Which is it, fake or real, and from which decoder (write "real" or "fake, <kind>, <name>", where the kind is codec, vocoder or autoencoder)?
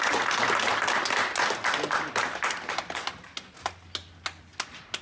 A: real